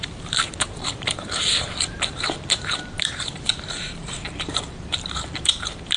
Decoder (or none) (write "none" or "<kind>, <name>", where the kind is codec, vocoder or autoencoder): vocoder, BigVGAN v2